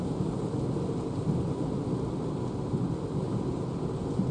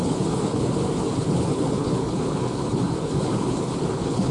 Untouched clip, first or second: first